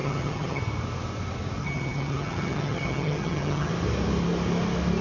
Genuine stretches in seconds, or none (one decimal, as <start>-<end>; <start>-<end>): 0.6-1.6; 3.7-5.0